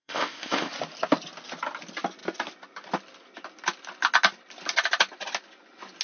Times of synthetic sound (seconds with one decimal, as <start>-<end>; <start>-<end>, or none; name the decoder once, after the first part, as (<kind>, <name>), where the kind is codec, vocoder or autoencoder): 0.0-0.7 (codec, ZipCodec)